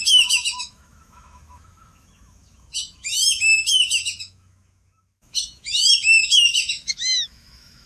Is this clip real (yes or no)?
no